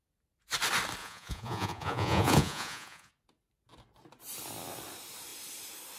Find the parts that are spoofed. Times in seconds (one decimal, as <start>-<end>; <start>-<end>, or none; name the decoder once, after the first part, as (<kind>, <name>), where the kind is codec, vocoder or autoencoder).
1.0-3.1 (vocoder, Vocos)

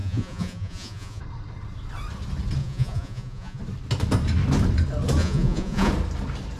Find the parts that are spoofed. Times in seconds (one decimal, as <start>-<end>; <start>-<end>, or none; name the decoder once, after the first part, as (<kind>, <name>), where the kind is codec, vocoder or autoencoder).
0.0-1.2 (vocoder, Vocos); 2.6-3.6; 5.2-5.9

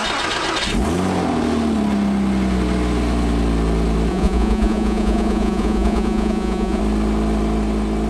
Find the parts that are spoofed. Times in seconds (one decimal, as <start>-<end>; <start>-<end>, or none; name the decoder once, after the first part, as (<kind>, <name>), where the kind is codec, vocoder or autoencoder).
4.1-6.8 (vocoder, Vocos)

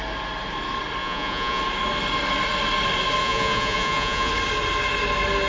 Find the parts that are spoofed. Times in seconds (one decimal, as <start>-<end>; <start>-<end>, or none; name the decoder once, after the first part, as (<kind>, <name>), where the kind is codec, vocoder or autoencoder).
1.0-1.6 (vocoder, Vocos); 3.2-4.3

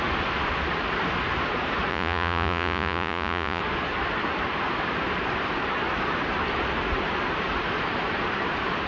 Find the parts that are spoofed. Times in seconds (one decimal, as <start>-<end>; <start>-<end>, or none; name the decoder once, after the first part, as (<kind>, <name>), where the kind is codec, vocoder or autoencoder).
1.9-3.6 (vocoder, Vocos)

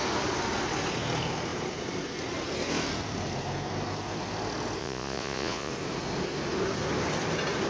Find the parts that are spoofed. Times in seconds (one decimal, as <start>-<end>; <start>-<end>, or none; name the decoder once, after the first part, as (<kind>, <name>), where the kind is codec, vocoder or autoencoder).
4.8-5.7 (vocoder, Vocos)

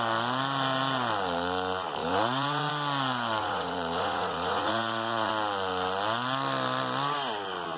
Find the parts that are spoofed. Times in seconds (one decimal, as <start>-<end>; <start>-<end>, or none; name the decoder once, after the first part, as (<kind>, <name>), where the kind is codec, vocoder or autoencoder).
2.0-2.7 (vocoder, Vocos); 3.4-5.3